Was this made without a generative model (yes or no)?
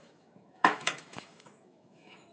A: no